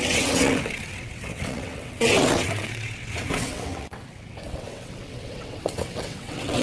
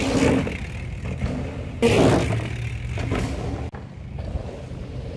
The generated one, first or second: first